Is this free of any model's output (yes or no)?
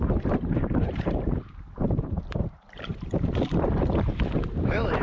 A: no